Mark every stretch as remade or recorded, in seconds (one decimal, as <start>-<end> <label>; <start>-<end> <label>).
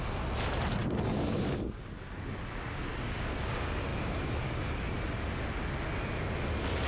0.0-0.8 recorded; 0.8-1.8 remade; 1.8-2.9 recorded; 2.9-3.5 remade; 3.5-6.9 recorded